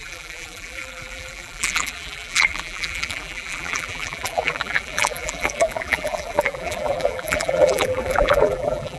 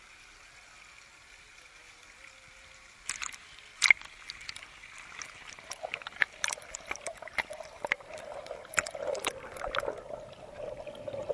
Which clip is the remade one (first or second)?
first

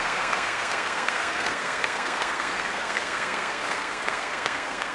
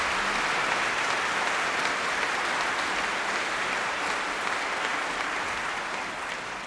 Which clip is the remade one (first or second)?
first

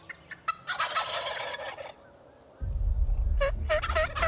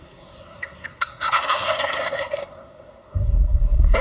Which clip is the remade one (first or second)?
second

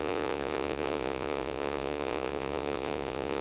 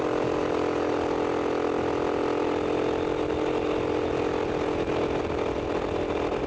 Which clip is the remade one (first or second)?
first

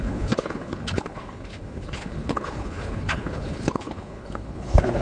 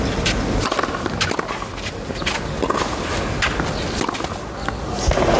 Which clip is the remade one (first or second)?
first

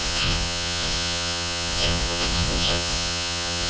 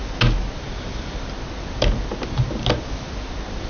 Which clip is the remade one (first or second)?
first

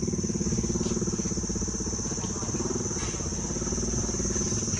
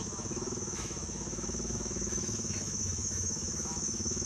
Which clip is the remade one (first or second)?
second